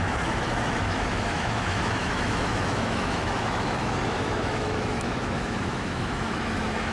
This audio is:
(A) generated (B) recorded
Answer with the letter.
A